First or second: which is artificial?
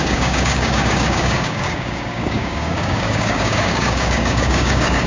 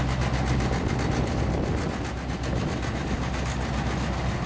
first